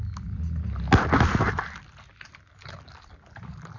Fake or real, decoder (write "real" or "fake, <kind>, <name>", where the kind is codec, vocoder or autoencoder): real